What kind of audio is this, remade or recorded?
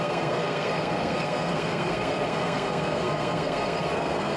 remade